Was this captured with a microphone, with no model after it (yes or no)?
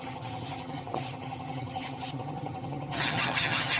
no